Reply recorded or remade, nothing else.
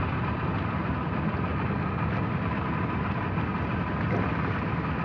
recorded